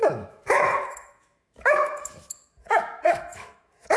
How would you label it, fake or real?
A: fake